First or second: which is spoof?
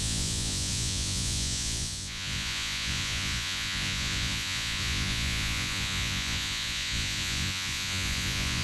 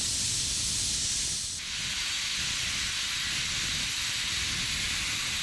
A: first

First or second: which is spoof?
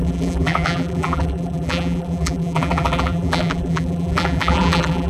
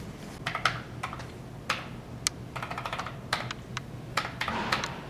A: first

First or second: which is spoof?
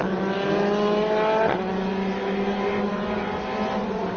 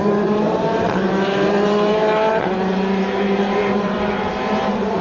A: second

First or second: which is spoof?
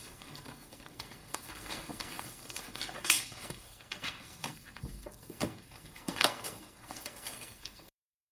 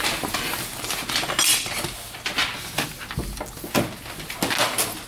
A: first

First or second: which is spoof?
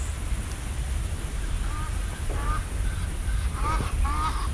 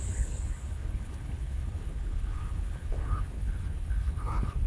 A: second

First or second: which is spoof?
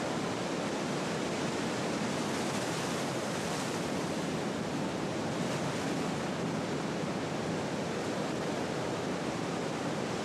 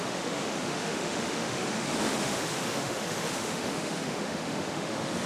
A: second